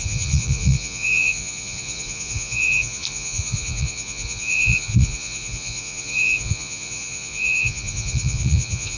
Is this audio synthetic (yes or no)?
yes